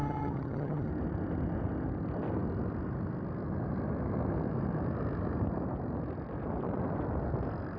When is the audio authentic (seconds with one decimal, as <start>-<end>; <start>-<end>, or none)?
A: 0.9-7.8